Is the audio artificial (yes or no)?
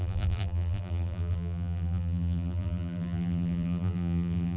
yes